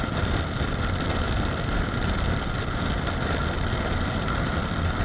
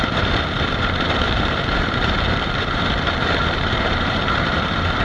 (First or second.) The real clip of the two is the first